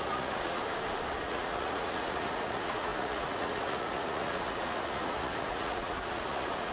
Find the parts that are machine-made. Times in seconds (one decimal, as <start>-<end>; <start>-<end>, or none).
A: 0.0-0.6; 1.2-6.7